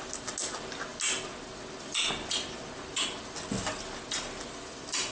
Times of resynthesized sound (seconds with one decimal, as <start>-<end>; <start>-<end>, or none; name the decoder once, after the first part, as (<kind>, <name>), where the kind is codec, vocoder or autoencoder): none